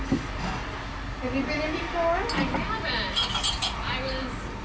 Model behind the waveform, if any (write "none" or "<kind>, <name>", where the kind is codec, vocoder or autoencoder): none